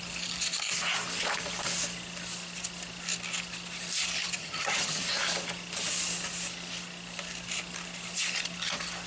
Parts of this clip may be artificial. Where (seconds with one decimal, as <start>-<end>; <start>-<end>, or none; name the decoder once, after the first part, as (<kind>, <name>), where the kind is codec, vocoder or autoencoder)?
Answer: 4.4-5.0 (vocoder, HiFi-GAN)